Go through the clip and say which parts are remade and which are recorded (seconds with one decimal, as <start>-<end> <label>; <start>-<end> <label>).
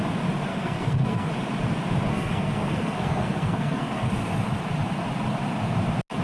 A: 0.0-0.5 recorded; 0.5-1.3 remade; 1.3-2.1 recorded; 2.1-4.1 remade; 4.1-6.2 recorded